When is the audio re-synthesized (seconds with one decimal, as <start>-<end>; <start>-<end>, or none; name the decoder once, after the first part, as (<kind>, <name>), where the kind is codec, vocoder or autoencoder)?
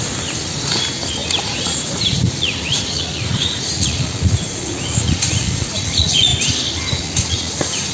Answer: 0.0-6.3 (vocoder, Vocos); 6.9-7.9